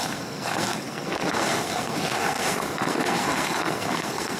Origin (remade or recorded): remade